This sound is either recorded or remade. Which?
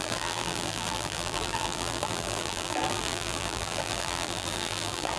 remade